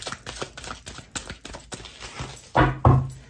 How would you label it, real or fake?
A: real